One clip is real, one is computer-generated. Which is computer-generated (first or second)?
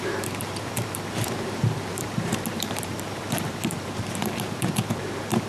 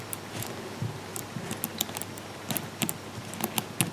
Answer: first